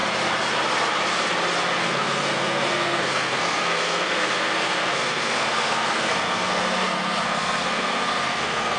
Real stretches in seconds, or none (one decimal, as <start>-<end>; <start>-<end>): 0.0-1.8